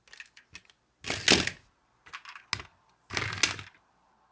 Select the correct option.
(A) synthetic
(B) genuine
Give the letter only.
B